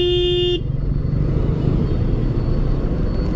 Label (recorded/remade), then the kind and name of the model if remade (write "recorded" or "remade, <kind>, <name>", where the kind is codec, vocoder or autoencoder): recorded